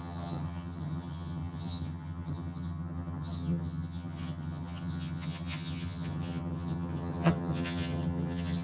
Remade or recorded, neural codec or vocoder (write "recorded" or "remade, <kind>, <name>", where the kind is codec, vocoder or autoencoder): remade, vocoder, HiFi-GAN